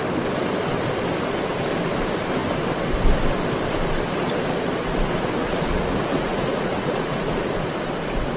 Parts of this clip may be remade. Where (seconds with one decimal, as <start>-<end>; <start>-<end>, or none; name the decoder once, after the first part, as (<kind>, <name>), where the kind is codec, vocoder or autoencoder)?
5.4-7.5 (vocoder, Vocos)